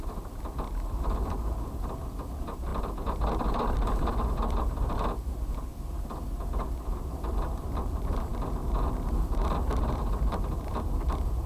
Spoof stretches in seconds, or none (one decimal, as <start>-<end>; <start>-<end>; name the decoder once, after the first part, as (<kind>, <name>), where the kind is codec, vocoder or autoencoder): 0.0-5.7 (vocoder, BigVGAN v2); 7.6-11.5